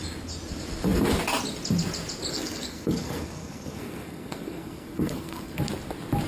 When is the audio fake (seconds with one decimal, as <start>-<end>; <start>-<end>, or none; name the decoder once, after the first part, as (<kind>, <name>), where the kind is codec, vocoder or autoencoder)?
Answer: 2.3-5.6 (codec, SNAC)